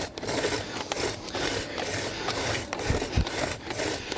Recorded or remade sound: recorded